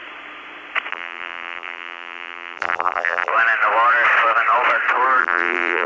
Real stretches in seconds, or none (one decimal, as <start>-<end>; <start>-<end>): 0.0-0.9; 3.3-5.2

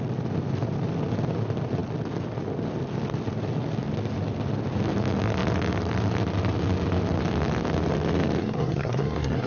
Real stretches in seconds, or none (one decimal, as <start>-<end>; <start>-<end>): 0.0-8.4

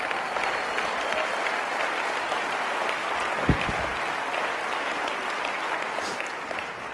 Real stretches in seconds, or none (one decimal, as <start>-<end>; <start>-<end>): 0.0-6.9

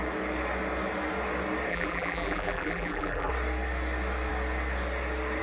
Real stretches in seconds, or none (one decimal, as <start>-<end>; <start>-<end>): 0.0-1.7; 3.3-5.4

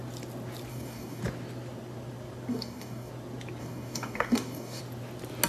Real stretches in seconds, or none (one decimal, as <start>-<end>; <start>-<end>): 0.0-0.7; 1.2-2.5; 3.1-3.6; 4.8-5.5

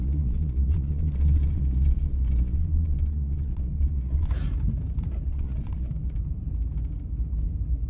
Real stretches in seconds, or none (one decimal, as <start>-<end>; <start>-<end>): 4.3-5.3; 5.9-7.9

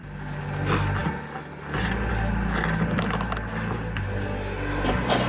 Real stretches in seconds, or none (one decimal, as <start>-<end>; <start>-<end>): 0.0-5.3

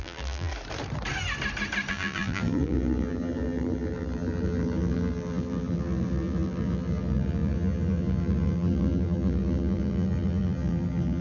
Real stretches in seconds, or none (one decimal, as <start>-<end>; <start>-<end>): 0.5-1.9